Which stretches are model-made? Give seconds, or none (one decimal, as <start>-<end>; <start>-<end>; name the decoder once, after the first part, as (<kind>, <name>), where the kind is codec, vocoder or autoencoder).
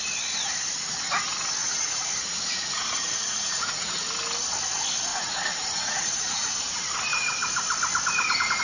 1.6-4.1 (vocoder, Vocos); 5.1-6.6